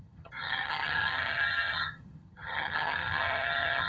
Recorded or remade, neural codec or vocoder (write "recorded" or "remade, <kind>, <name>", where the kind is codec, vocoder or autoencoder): remade, vocoder, HiFi-GAN